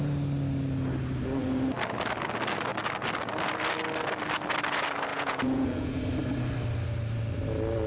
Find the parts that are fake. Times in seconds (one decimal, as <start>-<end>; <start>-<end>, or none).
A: 5.1-6.0